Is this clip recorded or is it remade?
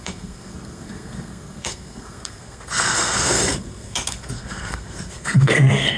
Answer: remade